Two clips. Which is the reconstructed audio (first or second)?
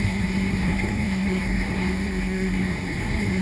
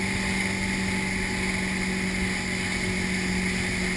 first